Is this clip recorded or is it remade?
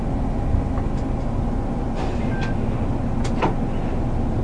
recorded